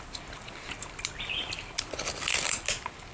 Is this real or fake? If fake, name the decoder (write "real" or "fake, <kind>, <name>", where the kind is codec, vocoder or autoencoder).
real